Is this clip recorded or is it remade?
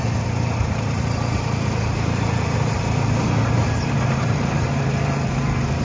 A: remade